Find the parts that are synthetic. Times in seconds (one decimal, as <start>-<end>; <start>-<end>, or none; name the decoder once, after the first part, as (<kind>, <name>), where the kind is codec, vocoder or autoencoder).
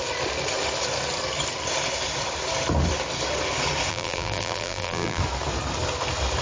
3.9-5.2 (vocoder, BigVGAN v2)